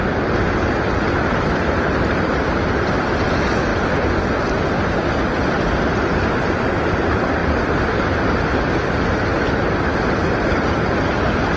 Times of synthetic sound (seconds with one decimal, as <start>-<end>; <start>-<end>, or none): 7.4-7.9